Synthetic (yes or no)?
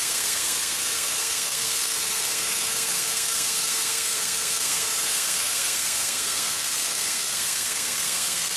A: yes